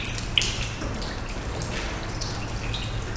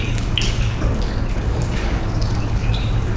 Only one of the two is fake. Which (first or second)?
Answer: second